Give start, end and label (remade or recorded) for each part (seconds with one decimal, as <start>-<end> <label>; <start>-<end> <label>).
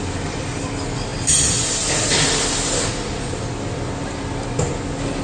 0.0-5.2 recorded